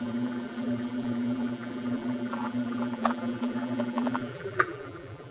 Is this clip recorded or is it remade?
remade